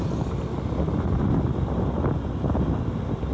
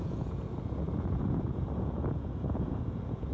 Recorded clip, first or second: first